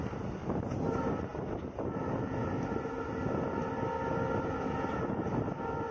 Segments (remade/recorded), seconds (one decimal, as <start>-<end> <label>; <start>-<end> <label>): 0.0-5.9 recorded